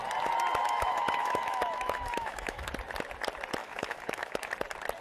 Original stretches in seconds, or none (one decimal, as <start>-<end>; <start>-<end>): 0.0-0.6; 2.7-3.6; 4.5-5.0